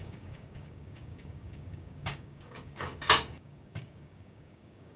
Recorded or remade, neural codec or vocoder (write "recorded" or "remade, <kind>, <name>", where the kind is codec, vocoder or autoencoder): remade, codec, DAC